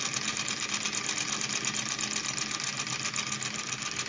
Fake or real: real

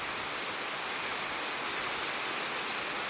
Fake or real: real